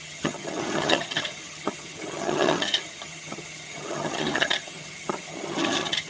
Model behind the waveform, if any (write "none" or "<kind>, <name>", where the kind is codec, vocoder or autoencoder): vocoder, HiFi-GAN